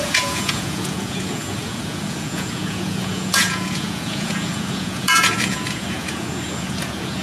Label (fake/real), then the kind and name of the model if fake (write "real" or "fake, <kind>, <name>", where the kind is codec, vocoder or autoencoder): fake, vocoder, Vocos